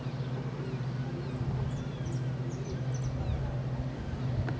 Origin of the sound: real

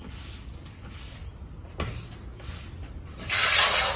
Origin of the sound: real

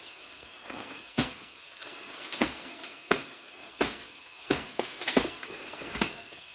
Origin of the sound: fake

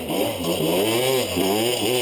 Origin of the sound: real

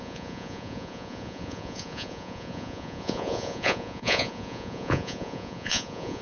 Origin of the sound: fake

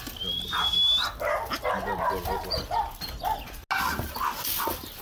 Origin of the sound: real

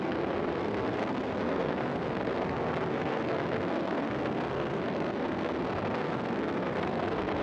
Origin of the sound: fake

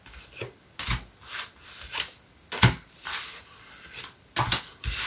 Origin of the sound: real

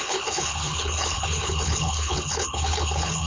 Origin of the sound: fake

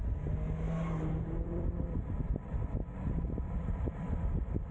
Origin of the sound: real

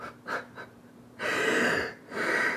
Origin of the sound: fake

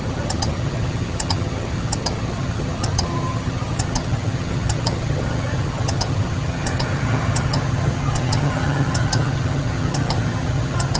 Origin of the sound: fake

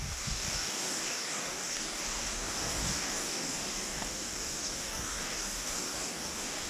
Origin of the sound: fake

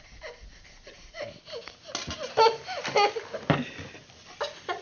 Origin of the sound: real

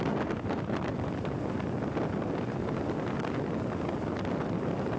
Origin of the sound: real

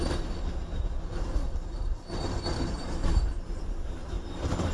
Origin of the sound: fake